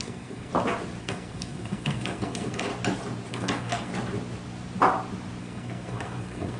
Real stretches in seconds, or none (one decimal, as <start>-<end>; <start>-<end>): 0.5-1.0; 2.7-3.3; 3.9-5.4